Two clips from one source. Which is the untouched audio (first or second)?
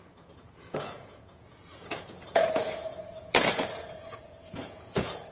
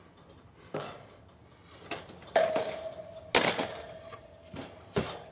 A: second